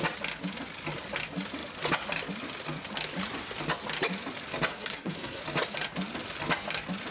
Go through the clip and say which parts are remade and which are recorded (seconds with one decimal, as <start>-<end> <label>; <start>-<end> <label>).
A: 0.0-4.7 recorded; 4.7-5.4 remade; 5.4-7.1 recorded